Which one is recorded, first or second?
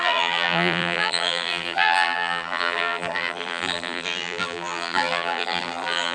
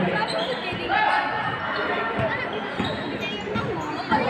second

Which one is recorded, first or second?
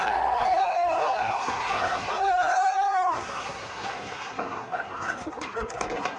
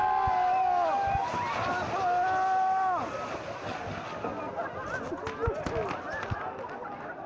second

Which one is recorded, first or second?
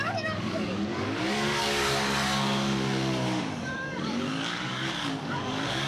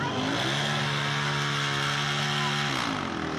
second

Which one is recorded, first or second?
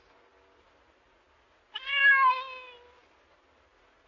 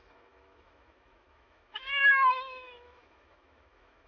first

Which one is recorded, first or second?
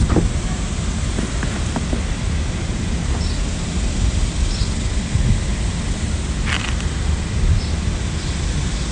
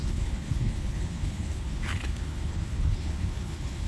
first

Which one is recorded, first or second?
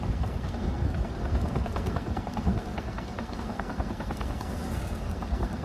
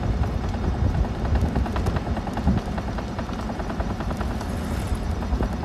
second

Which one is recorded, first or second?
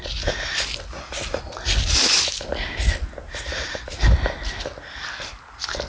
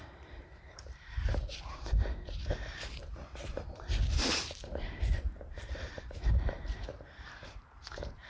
first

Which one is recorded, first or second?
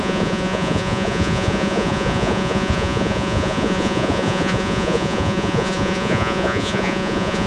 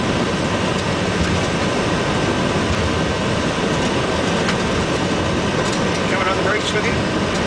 second